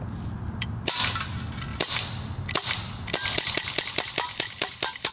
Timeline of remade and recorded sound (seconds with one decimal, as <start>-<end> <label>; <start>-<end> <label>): 0.0-5.1 recorded